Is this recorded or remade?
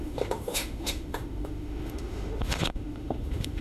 remade